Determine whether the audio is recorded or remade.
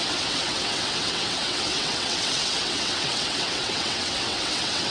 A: remade